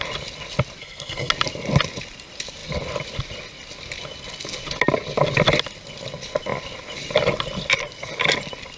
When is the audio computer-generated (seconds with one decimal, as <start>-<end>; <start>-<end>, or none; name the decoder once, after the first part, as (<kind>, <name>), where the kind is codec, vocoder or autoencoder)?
0.8-1.3 (codec, SNAC)